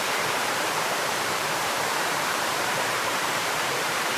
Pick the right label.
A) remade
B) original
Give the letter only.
A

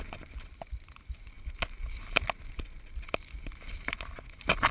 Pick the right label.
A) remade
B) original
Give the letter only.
B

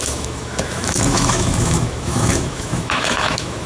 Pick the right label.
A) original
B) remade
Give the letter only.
B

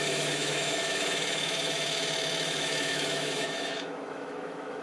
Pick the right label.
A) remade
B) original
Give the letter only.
A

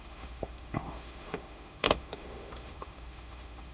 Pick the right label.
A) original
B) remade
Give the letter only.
B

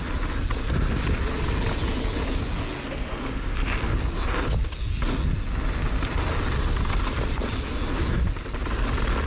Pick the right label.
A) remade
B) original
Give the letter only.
B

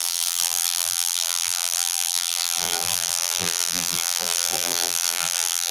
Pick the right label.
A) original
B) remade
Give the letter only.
B